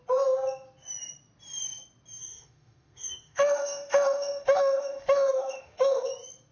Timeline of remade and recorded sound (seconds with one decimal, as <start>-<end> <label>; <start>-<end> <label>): 0.0-2.2 recorded; 2.2-6.1 remade; 6.1-6.5 recorded